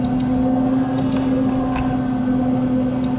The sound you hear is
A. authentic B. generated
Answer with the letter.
A